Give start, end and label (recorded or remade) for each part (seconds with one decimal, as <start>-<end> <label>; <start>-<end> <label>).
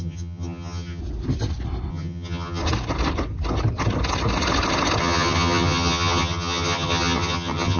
0.0-1.0 remade; 1.0-1.9 recorded; 1.9-2.6 remade; 2.6-5.0 recorded; 5.0-7.8 remade